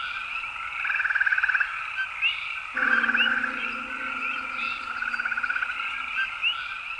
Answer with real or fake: real